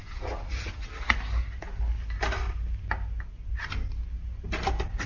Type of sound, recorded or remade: recorded